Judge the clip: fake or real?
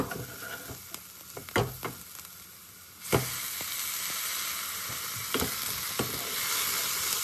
real